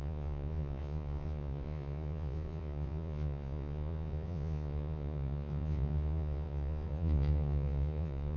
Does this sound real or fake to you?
fake